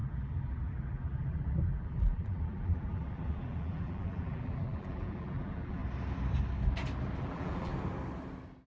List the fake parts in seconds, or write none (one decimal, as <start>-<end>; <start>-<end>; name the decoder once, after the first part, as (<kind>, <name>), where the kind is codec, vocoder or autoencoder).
0.0-5.8 (vocoder, BigVGAN v2); 7.2-7.7